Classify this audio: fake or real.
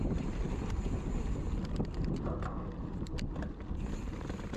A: real